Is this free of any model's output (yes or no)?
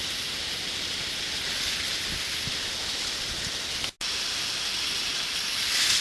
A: yes